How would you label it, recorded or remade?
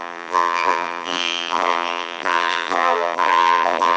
remade